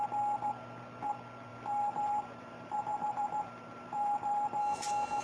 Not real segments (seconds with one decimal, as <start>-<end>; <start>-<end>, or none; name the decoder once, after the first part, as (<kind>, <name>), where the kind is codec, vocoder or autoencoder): 1.5-4.6 (vocoder, BigVGAN v2)